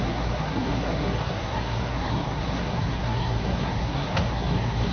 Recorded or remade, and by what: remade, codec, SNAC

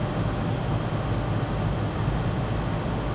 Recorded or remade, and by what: recorded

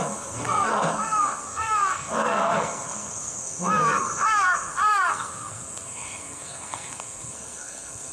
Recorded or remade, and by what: remade, codec, SNAC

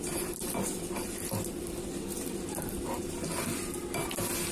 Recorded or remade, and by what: recorded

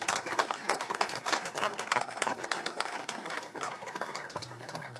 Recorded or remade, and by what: remade, codec, SNAC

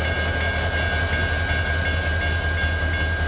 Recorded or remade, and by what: recorded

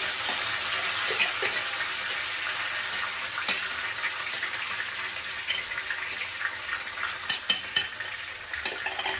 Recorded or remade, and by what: recorded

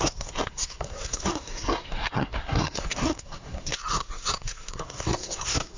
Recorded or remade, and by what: remade, codec, SNAC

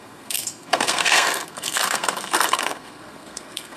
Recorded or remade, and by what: remade, codec, SNAC